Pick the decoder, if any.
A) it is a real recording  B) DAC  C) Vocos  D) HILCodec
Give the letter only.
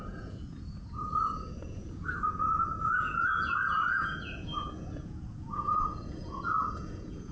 C